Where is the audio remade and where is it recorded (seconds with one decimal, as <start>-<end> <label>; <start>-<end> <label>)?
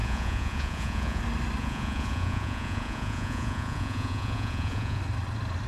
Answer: 0.0-1.2 remade; 1.2-1.6 recorded; 1.6-5.0 remade; 5.0-5.7 recorded